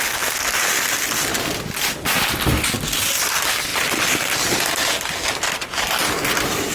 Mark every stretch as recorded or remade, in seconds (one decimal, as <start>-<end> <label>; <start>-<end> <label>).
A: 0.0-6.7 recorded